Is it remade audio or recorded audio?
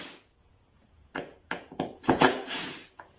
remade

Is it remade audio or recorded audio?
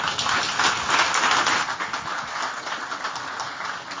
recorded